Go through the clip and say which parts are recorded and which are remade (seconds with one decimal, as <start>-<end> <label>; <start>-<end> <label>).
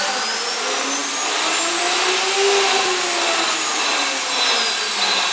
0.0-5.3 recorded